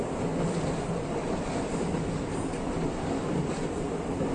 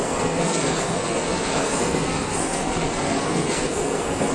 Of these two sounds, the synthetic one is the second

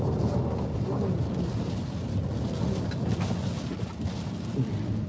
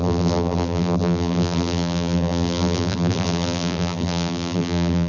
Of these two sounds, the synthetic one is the second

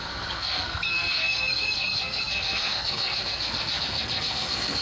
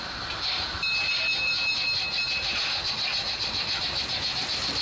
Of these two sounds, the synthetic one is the first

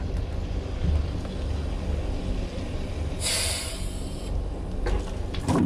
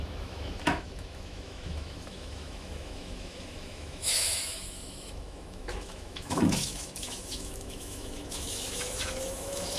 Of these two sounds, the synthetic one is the second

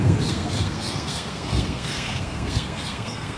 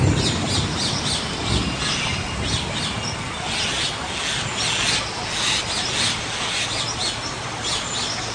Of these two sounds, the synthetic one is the first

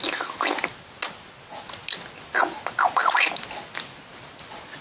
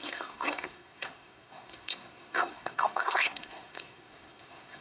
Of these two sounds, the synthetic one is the second